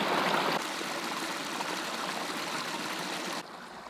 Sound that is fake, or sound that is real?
real